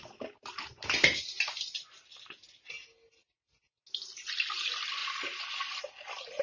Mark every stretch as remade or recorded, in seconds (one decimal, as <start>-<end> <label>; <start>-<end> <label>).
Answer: 0.0-6.4 recorded